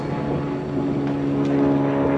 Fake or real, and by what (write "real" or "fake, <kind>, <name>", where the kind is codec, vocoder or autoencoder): real